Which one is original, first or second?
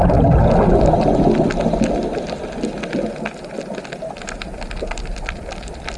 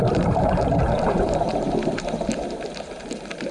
first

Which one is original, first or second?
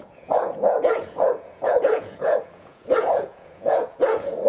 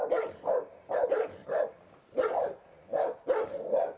second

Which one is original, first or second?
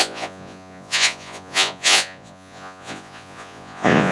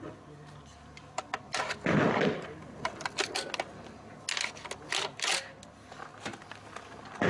second